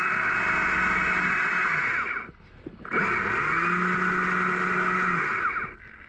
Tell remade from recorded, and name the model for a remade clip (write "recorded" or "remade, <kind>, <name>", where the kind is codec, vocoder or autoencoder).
recorded